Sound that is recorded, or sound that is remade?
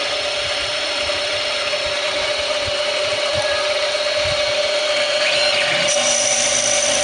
remade